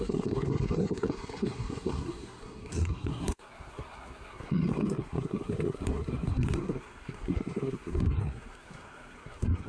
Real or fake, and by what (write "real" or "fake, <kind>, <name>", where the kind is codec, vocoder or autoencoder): fake, codec, SNAC